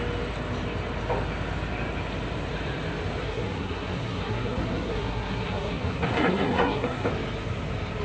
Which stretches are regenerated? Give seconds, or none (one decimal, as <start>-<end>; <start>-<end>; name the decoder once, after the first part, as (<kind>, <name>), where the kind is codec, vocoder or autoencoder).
3.2-7.1 (codec, SNAC)